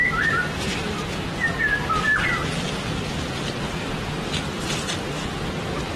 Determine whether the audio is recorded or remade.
recorded